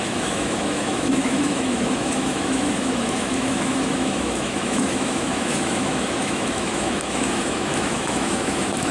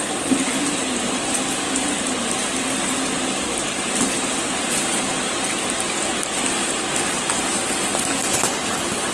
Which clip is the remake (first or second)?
first